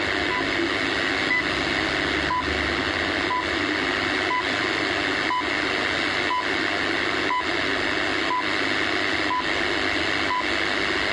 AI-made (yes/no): no